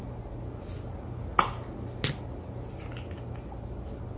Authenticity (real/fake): real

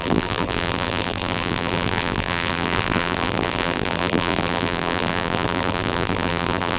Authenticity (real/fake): fake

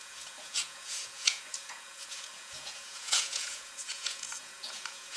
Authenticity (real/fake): fake